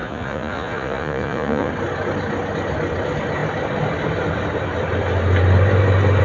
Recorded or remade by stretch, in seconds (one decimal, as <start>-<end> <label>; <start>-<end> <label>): 0.0-1.7 remade; 1.7-6.2 recorded